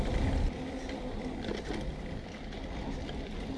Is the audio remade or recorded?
recorded